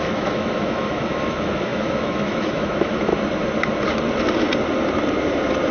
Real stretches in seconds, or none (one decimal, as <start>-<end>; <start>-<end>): 3.1-5.7